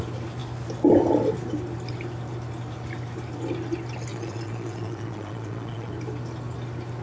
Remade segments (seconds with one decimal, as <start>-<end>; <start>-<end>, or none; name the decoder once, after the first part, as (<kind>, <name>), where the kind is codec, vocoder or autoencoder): 4.1-5.9 (vocoder, Vocos)